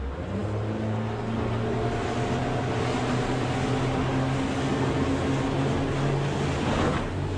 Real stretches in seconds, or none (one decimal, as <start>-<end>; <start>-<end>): 0.0-7.4